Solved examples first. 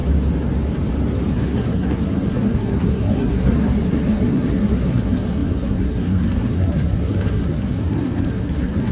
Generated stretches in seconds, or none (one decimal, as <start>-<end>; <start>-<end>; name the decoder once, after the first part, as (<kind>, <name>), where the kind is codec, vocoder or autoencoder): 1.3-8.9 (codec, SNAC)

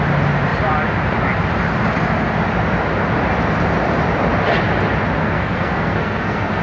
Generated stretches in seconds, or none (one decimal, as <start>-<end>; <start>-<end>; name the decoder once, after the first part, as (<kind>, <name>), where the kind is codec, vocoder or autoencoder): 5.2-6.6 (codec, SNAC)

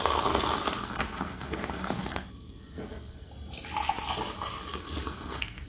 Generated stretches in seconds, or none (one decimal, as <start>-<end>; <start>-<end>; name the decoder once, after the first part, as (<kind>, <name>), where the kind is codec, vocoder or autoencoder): 0.8-3.3 (codec, SNAC); 4.7-5.7